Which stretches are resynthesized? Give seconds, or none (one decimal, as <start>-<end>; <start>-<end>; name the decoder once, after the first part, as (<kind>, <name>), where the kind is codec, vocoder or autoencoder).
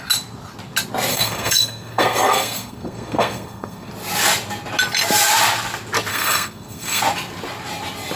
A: 1.1-3.9 (codec, SNAC); 6.1-7.0